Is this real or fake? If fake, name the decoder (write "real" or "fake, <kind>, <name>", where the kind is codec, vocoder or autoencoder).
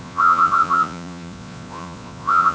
fake, vocoder, Vocos